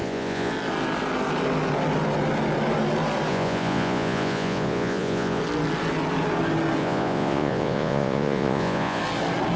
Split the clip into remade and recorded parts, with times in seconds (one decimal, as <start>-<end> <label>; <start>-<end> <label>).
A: 0.0-0.5 remade; 0.5-3.3 recorded; 3.3-5.4 remade; 5.4-6.8 recorded; 6.8-9.0 remade; 9.0-9.6 recorded